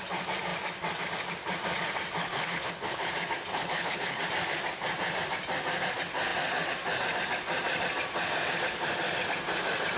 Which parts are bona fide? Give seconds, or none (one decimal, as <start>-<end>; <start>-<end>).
0.0-2.2; 3.1-3.5; 4.2-10.0